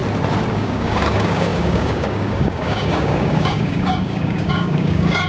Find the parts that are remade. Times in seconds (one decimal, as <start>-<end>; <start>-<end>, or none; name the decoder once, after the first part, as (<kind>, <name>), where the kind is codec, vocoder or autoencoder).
0.5-5.3 (codec, DAC)